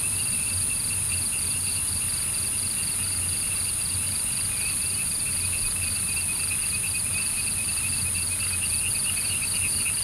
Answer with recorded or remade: recorded